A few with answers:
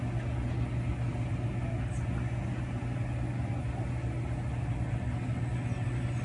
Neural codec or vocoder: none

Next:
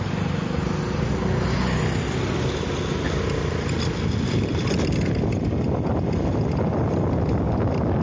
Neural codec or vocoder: none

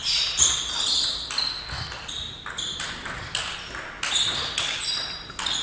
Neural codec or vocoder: none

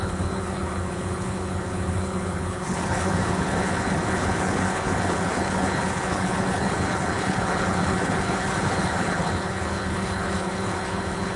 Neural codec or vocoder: codec, HILCodec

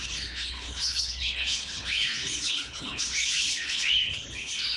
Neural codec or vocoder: codec, HILCodec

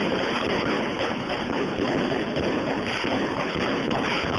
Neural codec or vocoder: codec, HILCodec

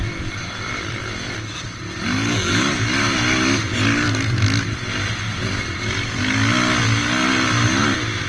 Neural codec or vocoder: none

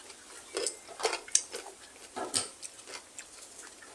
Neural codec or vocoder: none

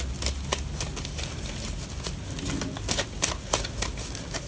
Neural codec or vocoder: none